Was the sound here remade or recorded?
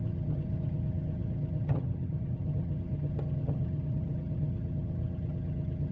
remade